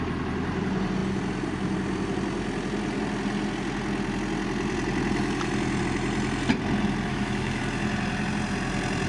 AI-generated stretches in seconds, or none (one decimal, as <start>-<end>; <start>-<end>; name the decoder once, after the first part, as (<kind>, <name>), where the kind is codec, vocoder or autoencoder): 7.1-7.6 (autoencoder, DAC-VAE)